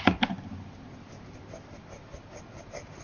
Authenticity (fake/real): real